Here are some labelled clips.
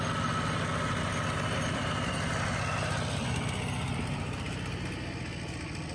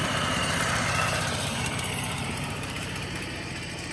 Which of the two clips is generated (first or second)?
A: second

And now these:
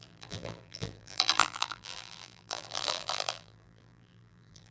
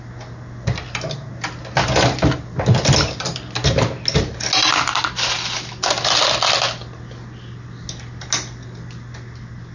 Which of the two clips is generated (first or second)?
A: first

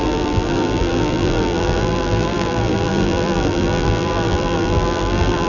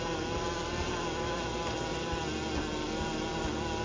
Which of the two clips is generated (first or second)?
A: first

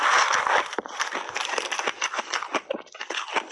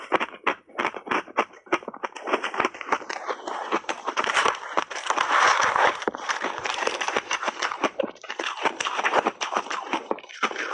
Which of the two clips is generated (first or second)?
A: second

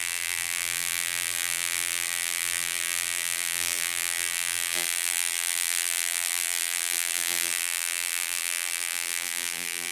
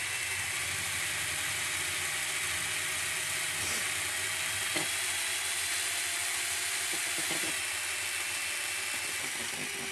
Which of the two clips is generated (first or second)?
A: first